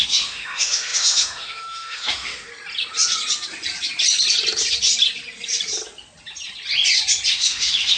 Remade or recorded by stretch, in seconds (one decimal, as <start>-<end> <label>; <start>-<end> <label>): 0.0-2.5 remade; 2.5-7.3 recorded; 7.3-8.0 remade